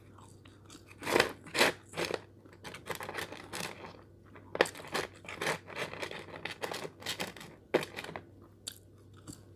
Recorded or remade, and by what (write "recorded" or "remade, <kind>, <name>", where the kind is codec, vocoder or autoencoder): recorded